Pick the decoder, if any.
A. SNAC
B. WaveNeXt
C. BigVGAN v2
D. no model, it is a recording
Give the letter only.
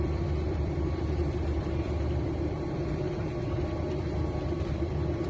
C